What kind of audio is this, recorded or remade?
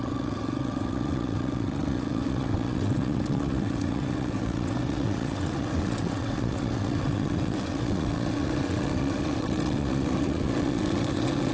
remade